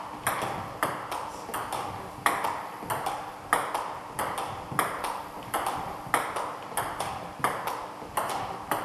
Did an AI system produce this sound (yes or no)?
no